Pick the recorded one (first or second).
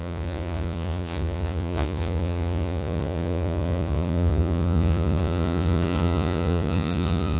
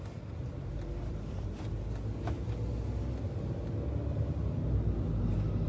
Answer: second